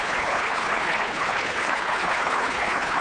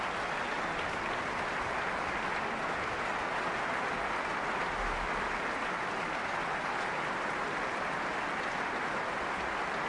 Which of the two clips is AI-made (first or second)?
first